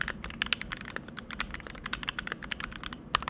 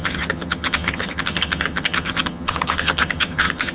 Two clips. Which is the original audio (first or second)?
first